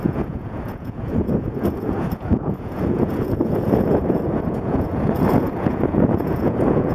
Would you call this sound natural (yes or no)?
no